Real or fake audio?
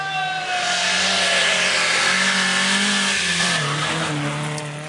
real